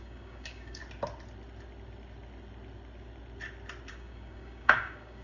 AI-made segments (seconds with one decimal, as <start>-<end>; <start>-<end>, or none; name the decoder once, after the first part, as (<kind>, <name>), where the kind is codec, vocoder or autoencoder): 0.0-0.8 (codec, DAC); 3.9-5.2